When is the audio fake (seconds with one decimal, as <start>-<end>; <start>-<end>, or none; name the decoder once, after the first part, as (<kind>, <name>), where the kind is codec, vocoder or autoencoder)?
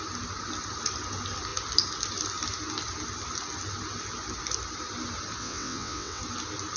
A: 5.4-6.2 (vocoder, WaveNeXt)